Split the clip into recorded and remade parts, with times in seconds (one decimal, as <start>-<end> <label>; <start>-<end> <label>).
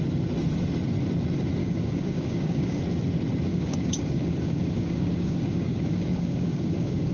0.0-1.6 recorded; 1.6-2.8 remade; 2.8-3.5 recorded; 3.5-7.1 remade